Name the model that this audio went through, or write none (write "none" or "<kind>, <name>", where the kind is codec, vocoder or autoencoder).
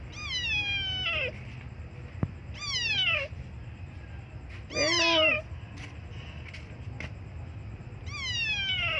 none